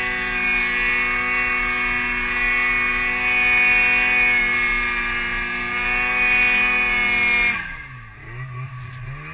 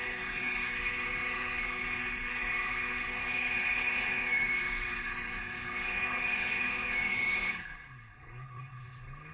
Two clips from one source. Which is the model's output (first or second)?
second